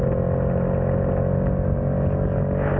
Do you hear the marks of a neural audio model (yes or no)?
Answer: no